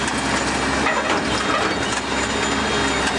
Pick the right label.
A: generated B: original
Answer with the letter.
B